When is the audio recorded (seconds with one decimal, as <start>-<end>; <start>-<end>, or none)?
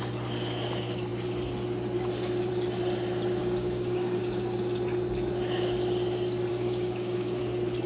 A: 0.0-3.4; 4.2-6.5; 7.4-7.9